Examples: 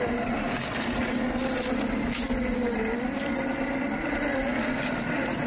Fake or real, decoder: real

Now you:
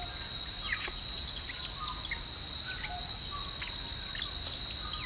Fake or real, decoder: real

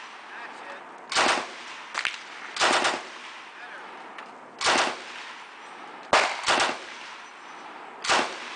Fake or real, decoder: real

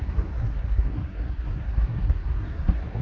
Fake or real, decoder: fake, codec, SNAC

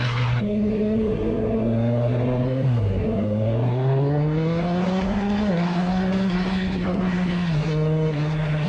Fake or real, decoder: fake, codec, SNAC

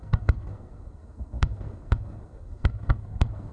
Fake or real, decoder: fake, codec, SNAC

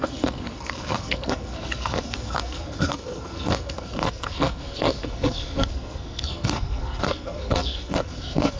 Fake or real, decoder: fake, codec, SNAC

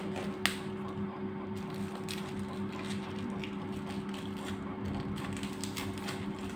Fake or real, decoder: real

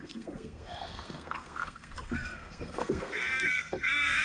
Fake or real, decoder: fake, codec, SNAC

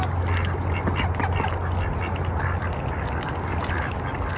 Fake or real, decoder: real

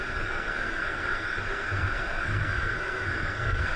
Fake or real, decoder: fake, codec, SNAC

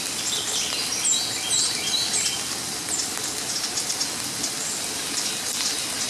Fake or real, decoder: real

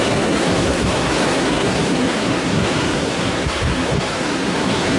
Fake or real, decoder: fake, codec, SNAC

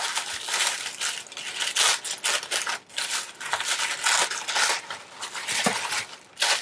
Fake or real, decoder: real